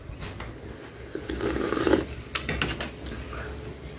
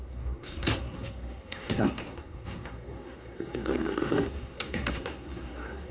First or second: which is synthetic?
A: second